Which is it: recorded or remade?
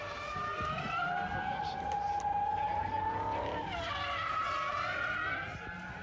recorded